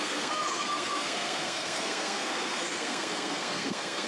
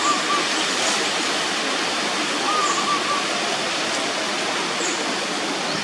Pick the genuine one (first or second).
second